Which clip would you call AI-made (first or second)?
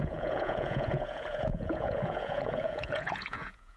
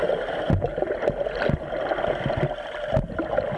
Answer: first